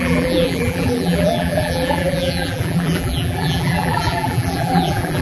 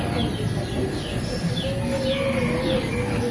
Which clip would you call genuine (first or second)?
second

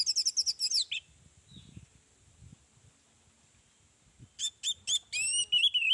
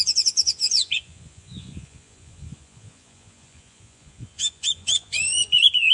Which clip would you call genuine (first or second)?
first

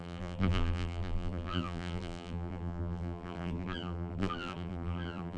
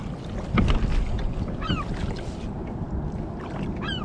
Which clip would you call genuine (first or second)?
second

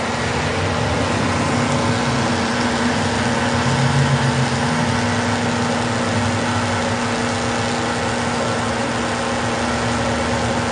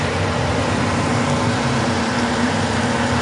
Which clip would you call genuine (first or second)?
first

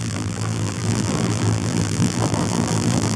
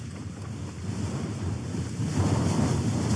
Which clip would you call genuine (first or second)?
second